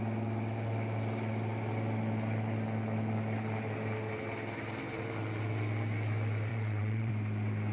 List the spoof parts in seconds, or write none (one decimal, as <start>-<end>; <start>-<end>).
6.5-7.1